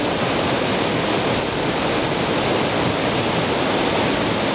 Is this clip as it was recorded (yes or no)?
yes